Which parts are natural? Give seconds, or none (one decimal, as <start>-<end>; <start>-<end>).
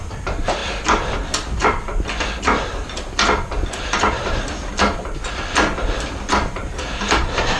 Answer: 0.6-3.9; 4.7-6.4